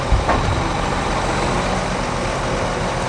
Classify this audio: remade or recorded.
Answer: recorded